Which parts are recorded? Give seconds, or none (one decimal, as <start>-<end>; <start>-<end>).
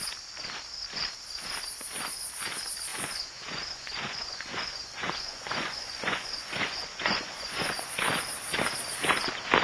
0.0-2.9; 7.9-9.6